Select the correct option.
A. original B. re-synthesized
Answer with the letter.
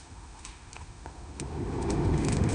B